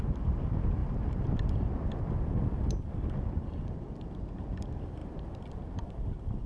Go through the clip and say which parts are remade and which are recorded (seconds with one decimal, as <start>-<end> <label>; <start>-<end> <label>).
0.0-6.5 recorded